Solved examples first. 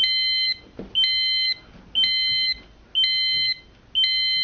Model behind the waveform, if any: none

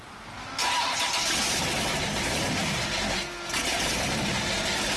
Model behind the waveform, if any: none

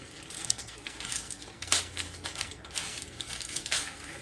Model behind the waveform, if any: codec, SNAC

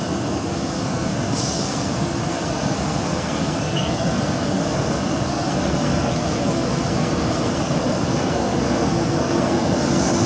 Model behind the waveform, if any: codec, SNAC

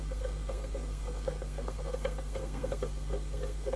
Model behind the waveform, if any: codec, SNAC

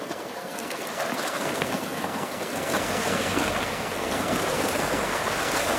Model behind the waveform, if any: codec, SNAC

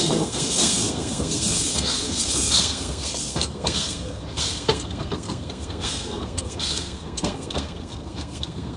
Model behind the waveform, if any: codec, SNAC